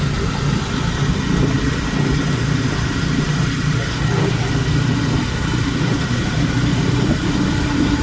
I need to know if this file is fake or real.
real